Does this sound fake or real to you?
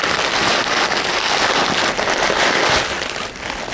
real